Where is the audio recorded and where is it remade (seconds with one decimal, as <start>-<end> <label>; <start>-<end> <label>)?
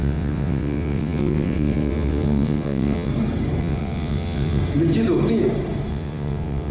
0.0-3.1 remade; 3.1-3.6 recorded; 3.6-4.6 remade; 4.6-5.9 recorded; 5.9-6.7 remade